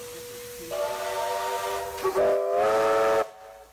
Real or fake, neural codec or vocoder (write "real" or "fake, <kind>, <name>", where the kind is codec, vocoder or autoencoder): real